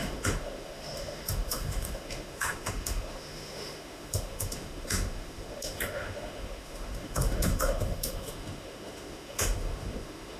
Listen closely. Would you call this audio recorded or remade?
remade